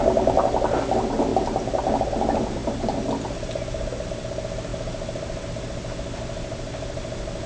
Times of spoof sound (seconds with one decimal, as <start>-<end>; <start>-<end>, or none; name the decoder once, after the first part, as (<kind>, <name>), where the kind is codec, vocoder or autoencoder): none